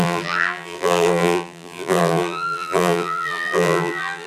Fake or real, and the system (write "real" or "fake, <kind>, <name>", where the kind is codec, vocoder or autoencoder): fake, vocoder, BigVGAN v2